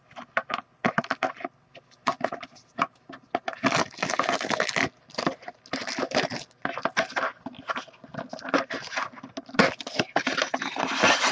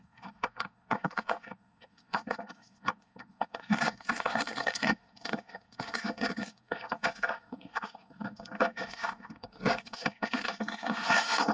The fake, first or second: second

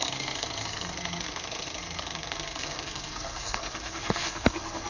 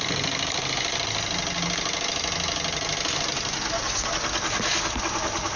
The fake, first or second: first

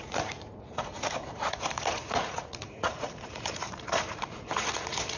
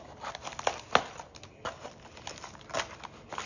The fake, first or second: first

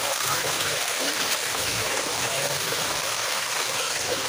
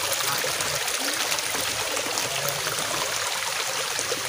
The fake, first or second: first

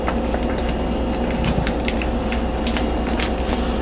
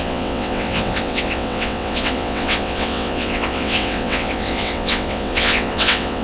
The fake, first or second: second